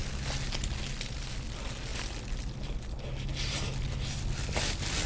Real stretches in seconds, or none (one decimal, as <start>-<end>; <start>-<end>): 0.0-5.1